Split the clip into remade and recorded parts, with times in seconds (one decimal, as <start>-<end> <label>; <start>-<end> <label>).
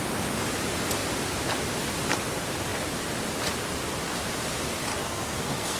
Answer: 0.0-4.9 recorded; 4.9-5.8 remade